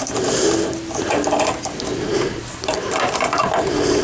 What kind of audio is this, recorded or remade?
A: recorded